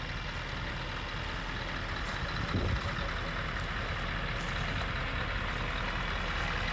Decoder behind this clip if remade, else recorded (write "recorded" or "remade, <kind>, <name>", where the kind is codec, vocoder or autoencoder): recorded